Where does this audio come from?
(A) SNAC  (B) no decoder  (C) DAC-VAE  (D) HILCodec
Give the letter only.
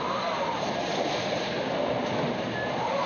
B